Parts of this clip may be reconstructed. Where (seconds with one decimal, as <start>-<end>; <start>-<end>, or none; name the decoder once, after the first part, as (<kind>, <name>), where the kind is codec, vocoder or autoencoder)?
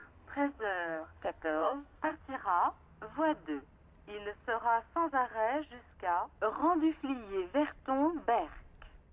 0.0-2.1 (codec, SNAC)